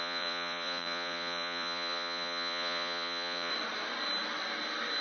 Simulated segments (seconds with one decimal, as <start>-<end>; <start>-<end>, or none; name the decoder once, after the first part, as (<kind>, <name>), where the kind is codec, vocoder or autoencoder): 0.0-3.5 (vocoder, Vocos)